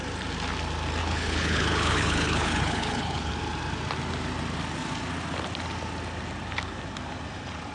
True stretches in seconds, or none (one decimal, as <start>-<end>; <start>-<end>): 0.0-1.0; 3.3-7.7